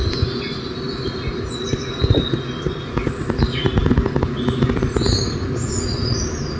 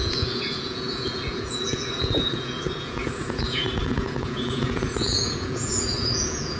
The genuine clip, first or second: first